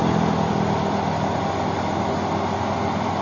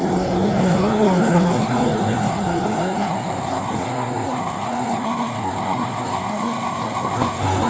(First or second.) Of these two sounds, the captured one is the first